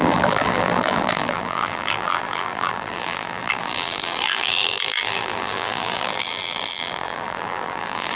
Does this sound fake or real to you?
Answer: fake